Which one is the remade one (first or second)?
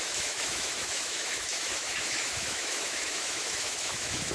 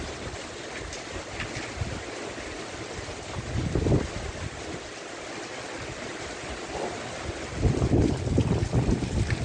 first